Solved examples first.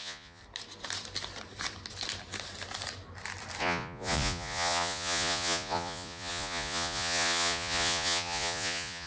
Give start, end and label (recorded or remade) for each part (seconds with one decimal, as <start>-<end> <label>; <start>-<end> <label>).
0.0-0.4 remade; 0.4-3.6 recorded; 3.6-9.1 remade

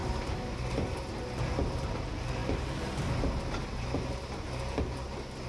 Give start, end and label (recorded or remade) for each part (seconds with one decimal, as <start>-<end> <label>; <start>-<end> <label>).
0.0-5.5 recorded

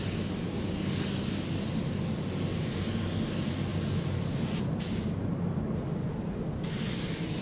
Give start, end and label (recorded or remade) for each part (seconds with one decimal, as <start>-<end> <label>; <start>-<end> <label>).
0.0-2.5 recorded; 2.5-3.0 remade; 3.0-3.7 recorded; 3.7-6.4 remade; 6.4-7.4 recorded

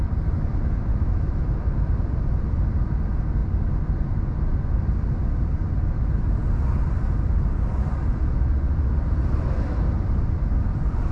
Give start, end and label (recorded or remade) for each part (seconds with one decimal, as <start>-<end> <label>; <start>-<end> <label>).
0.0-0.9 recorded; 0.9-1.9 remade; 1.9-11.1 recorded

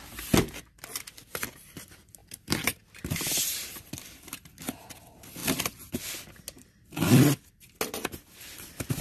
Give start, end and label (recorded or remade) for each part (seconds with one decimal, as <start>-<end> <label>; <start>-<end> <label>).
0.0-9.0 recorded